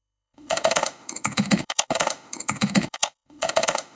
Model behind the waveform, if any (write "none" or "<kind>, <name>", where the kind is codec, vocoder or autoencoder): autoencoder, DAC-VAE